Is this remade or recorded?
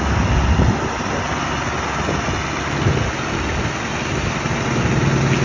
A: recorded